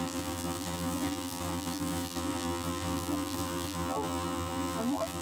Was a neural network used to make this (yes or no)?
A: yes